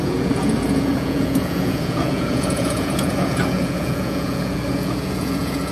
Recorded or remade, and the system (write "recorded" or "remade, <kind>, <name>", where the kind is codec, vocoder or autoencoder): remade, vocoder, Vocos